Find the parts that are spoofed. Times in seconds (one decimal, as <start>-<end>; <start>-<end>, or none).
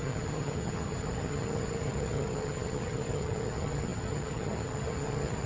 0.0-5.5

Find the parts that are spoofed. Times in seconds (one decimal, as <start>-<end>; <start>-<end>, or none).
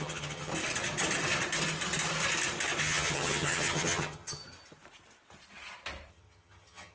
0.0-0.5; 2.8-4.4; 6.1-6.9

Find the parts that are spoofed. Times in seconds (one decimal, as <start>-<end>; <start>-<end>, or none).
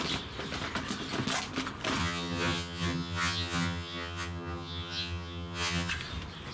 2.0-5.9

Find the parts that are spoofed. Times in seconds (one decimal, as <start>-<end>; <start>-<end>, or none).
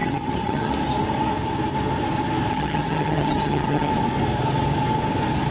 0.0-0.7; 2.5-3.9